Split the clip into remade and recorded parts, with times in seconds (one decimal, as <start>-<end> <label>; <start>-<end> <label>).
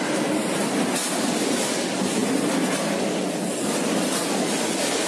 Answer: 0.0-5.1 recorded